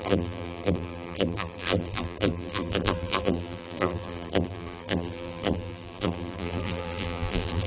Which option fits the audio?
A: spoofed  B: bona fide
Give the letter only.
A